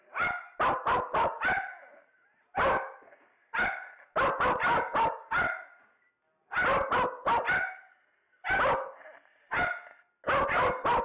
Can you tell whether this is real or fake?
real